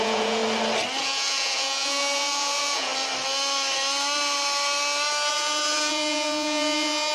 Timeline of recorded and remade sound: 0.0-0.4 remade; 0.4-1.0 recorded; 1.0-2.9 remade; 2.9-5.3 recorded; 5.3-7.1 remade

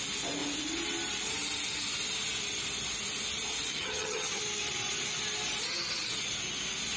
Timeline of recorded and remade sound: 0.0-3.7 recorded; 3.7-4.4 remade; 4.4-7.0 recorded